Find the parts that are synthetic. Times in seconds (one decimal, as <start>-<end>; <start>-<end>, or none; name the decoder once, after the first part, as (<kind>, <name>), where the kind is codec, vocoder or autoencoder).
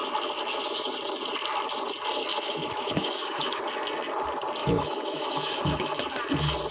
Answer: 2.3-3.6 (autoencoder, DAC-VAE); 4.6-6.0